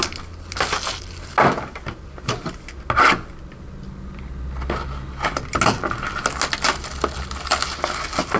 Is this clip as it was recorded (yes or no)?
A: yes